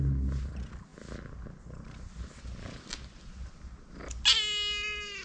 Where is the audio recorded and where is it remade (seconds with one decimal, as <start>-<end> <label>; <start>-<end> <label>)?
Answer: 0.0-5.2 recorded